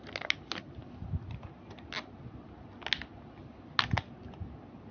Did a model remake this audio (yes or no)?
no